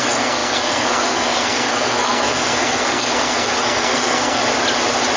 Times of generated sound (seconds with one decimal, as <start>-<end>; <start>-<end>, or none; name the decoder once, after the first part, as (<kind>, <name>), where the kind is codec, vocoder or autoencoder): 0.0-4.4 (codec, SNAC)